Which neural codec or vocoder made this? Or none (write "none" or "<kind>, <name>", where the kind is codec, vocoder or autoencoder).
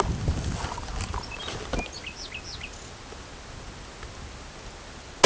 none